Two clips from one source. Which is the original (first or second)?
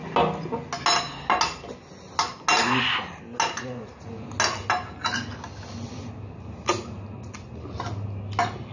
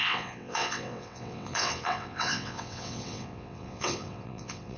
first